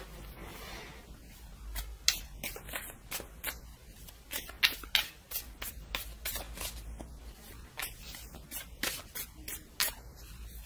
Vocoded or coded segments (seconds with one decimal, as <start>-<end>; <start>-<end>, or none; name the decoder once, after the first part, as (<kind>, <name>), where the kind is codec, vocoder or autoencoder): none